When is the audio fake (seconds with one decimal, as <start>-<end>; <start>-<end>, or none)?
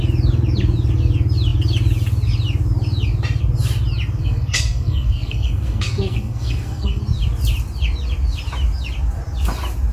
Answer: 4.2-7.0